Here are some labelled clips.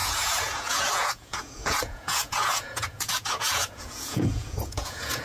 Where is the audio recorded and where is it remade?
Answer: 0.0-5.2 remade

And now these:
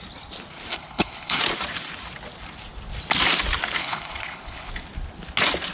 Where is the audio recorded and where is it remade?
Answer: 0.0-0.7 recorded; 0.7-1.4 remade; 1.4-3.8 recorded; 3.8-4.7 remade; 4.7-5.7 recorded

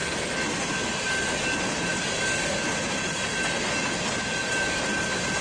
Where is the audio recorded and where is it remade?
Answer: 0.0-5.4 recorded

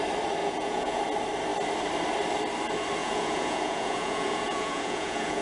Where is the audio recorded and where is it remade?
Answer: 0.0-0.4 recorded; 0.4-1.0 remade; 1.0-3.0 recorded; 3.0-5.4 remade

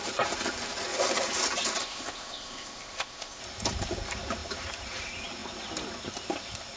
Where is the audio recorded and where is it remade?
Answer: 0.0-1.8 recorded; 1.8-3.4 remade; 3.4-6.8 recorded

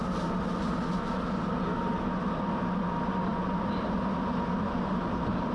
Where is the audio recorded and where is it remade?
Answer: 0.0-5.5 recorded